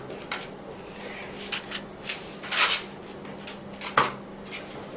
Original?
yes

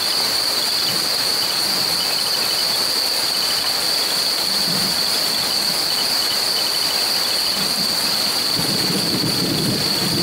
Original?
yes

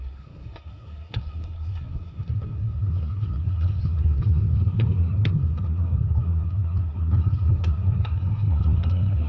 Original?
no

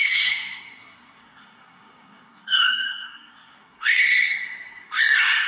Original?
no